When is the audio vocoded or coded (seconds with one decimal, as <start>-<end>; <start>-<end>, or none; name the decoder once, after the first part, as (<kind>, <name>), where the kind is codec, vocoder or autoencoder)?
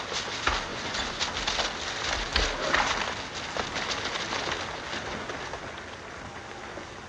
0.7-1.2 (vocoder, Vocos)